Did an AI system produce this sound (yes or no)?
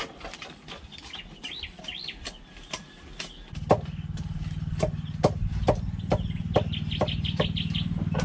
no